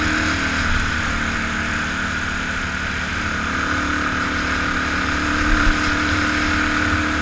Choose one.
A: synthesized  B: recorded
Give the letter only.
B